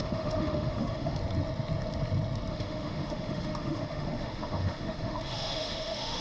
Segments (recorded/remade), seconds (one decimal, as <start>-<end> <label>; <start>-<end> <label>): 0.0-1.2 remade; 1.2-2.5 recorded; 2.5-6.2 remade

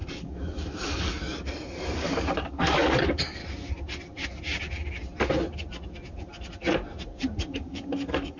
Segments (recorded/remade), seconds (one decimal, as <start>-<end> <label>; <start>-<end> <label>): 0.0-3.4 remade; 3.4-7.4 recorded; 7.4-8.4 remade

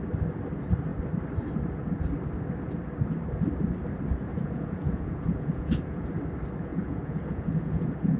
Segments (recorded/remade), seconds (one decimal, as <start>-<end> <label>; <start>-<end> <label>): 0.0-4.3 recorded; 4.3-6.1 remade; 6.1-6.7 recorded; 6.7-8.2 remade

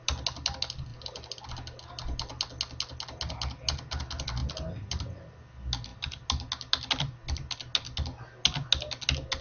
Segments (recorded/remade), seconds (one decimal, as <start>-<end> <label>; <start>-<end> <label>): 0.0-9.4 recorded

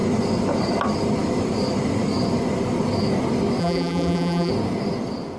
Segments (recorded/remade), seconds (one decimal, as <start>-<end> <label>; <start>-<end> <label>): 0.0-3.6 recorded; 3.6-4.5 remade; 4.5-5.4 recorded

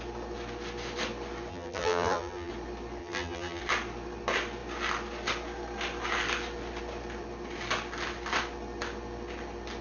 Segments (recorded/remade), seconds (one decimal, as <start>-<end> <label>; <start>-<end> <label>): 0.0-1.5 recorded; 1.5-2.5 remade; 2.5-3.0 recorded; 3.0-3.6 remade; 3.6-9.8 recorded

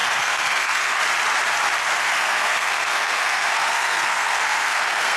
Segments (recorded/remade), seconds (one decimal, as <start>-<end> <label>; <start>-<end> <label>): 0.0-1.0 remade; 1.0-2.1 recorded; 2.1-5.2 remade

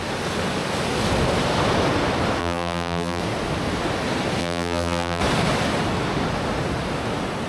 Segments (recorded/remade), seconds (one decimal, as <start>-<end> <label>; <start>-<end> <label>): 0.0-2.4 recorded; 2.4-3.2 remade; 3.2-4.4 recorded; 4.4-5.2 remade; 5.2-7.5 recorded